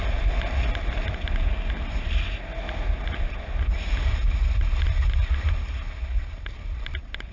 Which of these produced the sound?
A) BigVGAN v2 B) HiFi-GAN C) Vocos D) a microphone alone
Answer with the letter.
D